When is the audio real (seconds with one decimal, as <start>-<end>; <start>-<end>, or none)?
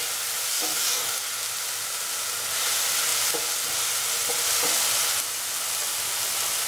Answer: 0.0-0.5; 1.2-6.7